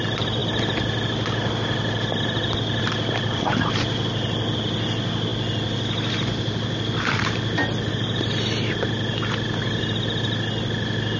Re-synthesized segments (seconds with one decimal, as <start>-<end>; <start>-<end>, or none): none